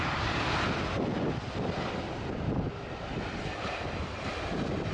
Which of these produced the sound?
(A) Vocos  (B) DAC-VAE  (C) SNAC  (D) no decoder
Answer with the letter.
D